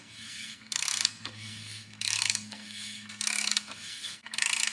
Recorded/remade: remade